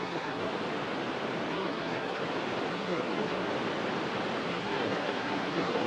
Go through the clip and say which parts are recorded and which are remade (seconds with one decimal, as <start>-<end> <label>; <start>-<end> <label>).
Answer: 0.0-0.5 remade; 0.5-1.5 recorded; 1.5-2.2 remade; 2.2-2.7 recorded; 2.7-3.5 remade; 3.5-4.5 recorded; 4.5-5.9 remade